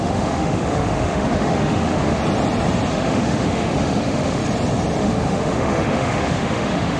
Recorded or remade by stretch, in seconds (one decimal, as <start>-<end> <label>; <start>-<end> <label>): 0.0-2.2 remade; 2.2-2.9 recorded; 2.9-4.4 remade; 4.4-5.0 recorded; 5.0-7.0 remade